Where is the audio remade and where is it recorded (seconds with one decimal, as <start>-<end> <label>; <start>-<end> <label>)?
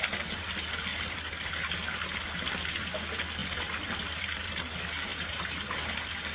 0.0-0.9 recorded; 0.9-1.5 remade; 1.5-3.4 recorded; 3.4-4.5 remade; 4.5-5.1 recorded; 5.1-5.6 remade; 5.6-6.3 recorded